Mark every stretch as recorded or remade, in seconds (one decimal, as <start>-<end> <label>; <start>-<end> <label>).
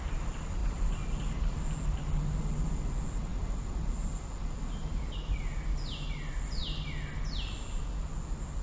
0.0-8.6 recorded